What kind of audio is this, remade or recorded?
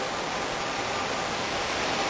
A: recorded